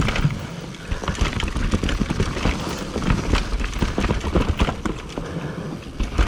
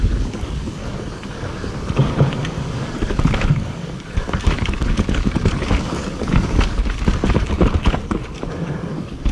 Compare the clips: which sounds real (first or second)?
first